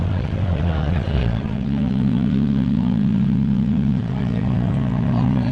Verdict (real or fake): fake